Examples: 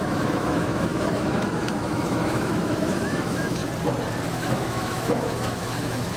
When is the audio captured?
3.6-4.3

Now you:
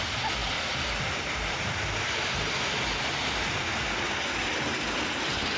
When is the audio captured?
0.0-5.6

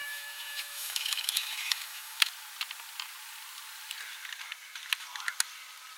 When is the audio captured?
2.3-6.0